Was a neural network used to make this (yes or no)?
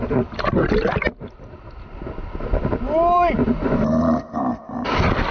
no